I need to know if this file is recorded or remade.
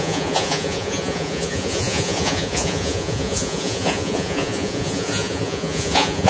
remade